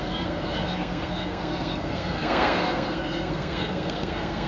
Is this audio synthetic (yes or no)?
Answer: yes